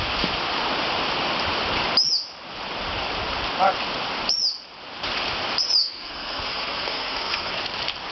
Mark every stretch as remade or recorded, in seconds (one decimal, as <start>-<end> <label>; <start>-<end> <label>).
0.0-5.8 recorded; 5.8-7.5 remade; 7.5-8.1 recorded